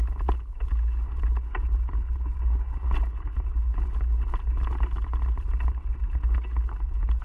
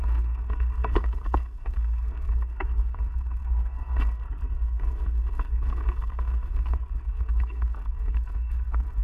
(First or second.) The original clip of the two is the first